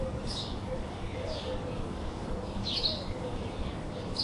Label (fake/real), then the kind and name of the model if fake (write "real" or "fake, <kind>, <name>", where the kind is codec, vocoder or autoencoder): fake, codec, DAC